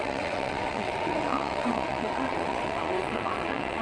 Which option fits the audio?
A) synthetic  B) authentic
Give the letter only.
A